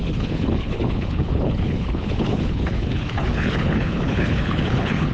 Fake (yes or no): yes